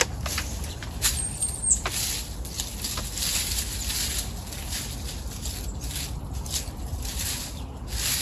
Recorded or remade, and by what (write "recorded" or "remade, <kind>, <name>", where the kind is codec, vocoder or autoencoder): recorded